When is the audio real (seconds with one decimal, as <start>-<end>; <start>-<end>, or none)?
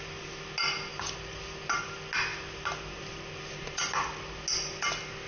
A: 0.0-5.3